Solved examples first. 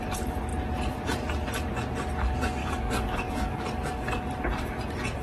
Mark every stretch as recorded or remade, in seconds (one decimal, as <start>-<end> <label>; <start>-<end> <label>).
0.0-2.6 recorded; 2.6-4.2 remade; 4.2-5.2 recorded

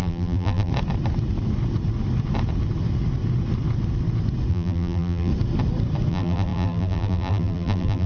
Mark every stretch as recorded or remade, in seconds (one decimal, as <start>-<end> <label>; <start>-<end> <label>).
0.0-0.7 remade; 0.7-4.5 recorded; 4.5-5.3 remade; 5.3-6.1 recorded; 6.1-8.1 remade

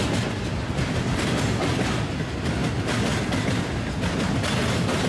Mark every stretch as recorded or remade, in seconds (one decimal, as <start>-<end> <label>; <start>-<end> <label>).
0.0-5.1 recorded